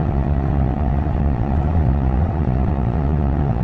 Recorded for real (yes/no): no